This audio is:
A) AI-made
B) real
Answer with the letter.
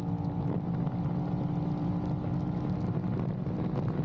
B